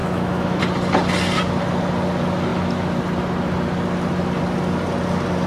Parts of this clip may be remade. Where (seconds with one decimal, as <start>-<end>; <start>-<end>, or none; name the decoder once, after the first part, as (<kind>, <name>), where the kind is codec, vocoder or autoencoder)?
0.0-0.6 (autoencoder, DAC-VAE)